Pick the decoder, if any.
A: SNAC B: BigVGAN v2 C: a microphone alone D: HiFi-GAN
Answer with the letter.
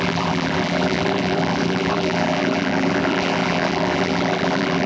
B